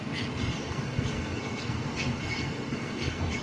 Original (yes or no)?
no